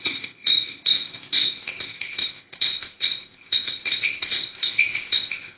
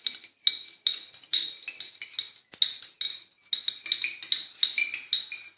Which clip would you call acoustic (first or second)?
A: second